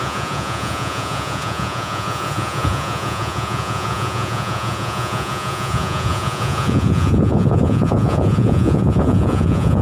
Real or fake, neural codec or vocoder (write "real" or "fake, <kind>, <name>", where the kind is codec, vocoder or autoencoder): fake, vocoder, Vocos